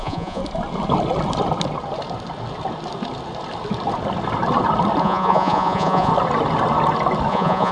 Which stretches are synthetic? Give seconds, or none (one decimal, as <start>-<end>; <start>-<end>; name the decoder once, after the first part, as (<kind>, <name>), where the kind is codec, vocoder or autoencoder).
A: 0.0-0.4 (vocoder, Vocos); 5.0-6.1; 7.3-7.7